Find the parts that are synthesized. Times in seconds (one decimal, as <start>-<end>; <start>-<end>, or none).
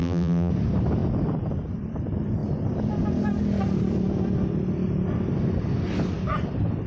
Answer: 0.0-0.5